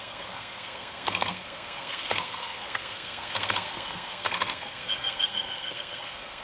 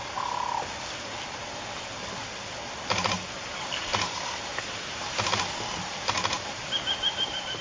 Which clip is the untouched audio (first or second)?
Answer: second